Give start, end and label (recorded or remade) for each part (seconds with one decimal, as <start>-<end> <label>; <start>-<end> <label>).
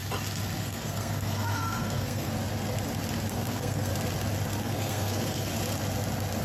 0.0-0.6 recorded; 0.6-2.3 remade; 2.3-3.3 recorded; 3.3-3.9 remade; 3.9-4.6 recorded; 4.6-5.5 remade; 5.5-6.4 recorded